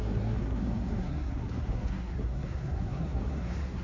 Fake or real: fake